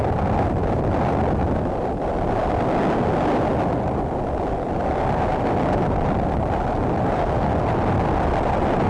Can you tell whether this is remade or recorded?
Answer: recorded